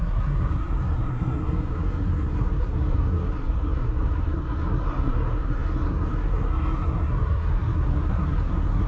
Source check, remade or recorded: remade